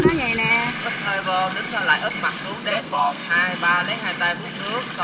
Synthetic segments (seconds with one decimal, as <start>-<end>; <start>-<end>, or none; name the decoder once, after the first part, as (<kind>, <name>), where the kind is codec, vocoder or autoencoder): 2.7-3.3 (codec, SNAC)